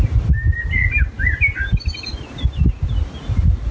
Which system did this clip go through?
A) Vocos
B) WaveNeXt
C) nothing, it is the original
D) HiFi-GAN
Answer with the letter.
C